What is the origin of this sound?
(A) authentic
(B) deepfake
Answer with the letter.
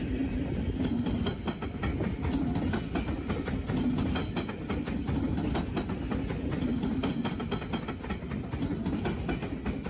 A